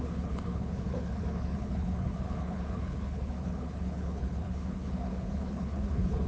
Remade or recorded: remade